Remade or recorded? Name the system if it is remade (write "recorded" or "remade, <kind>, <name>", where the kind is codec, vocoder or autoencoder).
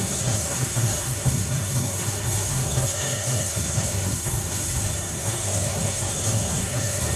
remade, codec, SNAC